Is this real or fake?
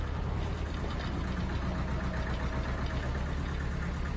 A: real